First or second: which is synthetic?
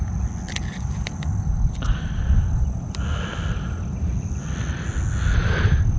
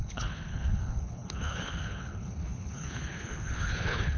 second